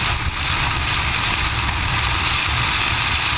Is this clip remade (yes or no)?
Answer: no